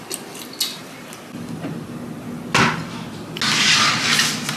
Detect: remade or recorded recorded